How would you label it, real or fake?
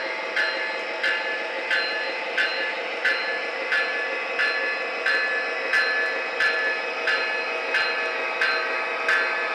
real